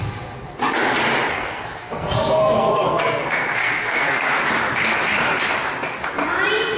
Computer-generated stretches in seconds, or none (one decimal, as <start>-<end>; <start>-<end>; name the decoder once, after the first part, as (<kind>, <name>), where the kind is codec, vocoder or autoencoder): 1.3-4.4 (codec, SNAC)